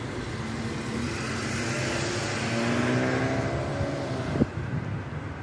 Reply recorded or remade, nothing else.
recorded